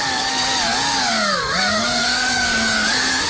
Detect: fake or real fake